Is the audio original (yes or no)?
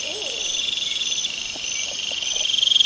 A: no